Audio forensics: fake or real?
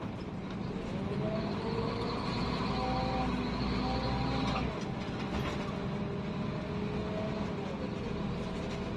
real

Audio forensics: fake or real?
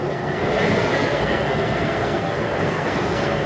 fake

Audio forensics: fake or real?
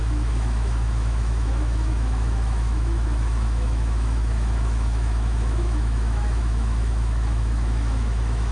fake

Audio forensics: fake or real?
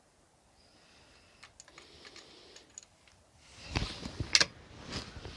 real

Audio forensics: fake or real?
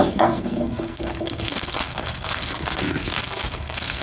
fake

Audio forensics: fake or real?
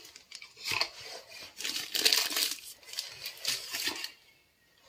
real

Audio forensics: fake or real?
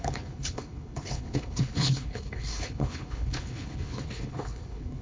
fake